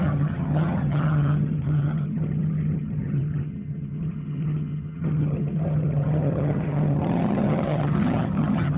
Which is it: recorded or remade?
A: remade